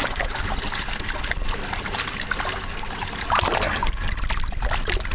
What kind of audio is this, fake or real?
real